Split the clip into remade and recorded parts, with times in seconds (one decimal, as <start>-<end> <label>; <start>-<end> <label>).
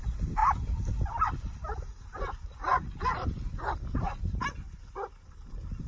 0.0-5.9 recorded